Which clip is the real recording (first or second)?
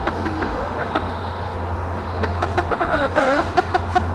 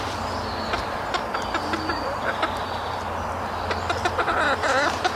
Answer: second